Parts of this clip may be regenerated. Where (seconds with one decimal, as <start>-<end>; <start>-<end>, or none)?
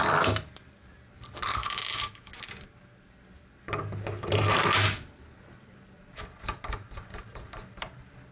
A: 1.6-2.3